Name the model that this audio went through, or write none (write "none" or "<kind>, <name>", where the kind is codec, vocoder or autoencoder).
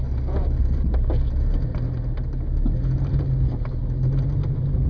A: none